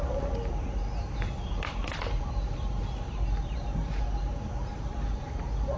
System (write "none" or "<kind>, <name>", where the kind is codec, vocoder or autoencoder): none